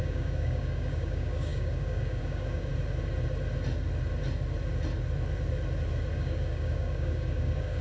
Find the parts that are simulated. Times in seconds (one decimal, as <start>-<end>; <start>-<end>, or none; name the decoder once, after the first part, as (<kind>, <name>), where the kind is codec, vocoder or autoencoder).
0.0-2.7 (codec, DAC); 6.1-7.8